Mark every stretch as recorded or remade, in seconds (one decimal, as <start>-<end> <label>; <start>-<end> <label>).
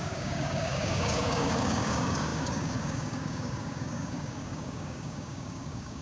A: 0.0-6.0 remade